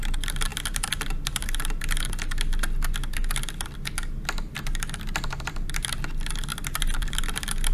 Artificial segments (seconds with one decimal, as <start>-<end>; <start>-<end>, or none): 6.5-7.2